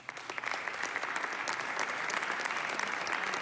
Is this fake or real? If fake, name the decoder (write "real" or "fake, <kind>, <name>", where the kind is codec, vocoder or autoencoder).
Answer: real